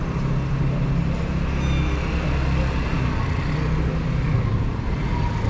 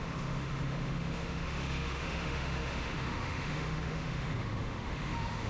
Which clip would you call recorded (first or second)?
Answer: first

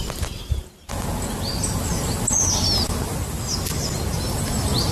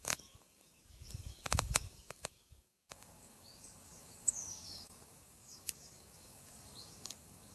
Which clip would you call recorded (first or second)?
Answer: first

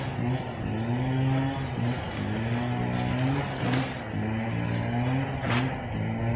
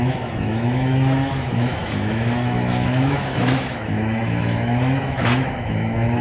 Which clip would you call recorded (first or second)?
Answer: first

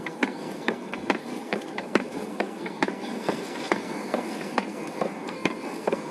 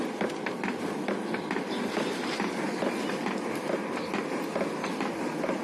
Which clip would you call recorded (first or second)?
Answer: second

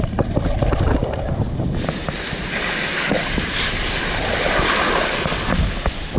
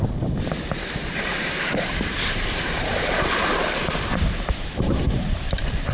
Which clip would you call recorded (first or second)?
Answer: first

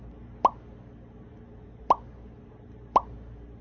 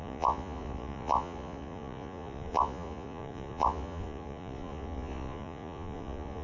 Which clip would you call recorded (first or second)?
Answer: first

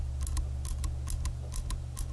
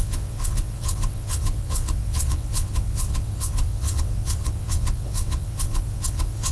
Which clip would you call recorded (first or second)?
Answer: first